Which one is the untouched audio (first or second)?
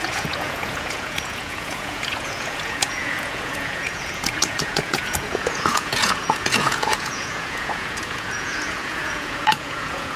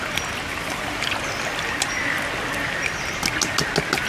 second